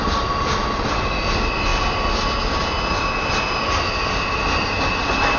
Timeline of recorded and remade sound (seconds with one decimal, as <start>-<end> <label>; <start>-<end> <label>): 0.0-5.4 recorded